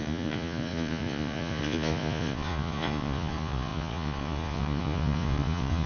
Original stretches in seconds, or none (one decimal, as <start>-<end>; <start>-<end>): none